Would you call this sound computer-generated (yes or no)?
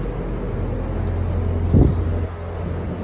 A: no